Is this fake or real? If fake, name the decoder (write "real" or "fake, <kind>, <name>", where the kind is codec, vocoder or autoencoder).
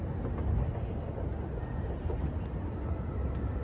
real